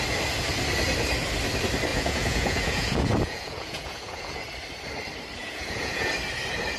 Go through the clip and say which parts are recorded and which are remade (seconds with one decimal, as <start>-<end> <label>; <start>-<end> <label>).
0.0-1.9 recorded; 1.9-4.4 remade; 4.4-5.4 recorded; 5.4-6.1 remade; 6.1-6.8 recorded